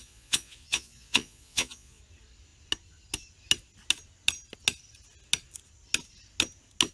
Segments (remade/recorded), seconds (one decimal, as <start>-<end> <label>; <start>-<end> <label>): 0.0-2.0 remade; 2.0-6.9 recorded